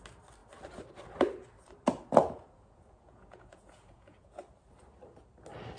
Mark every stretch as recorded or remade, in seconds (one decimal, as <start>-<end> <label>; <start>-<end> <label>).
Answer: 0.0-2.2 recorded; 2.2-4.4 remade; 4.4-5.8 recorded